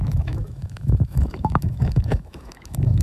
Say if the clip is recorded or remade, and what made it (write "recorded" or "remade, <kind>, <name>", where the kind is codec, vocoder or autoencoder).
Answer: remade, autoencoder, DAC-VAE